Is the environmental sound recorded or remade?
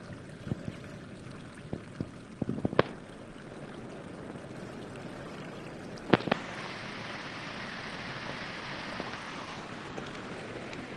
recorded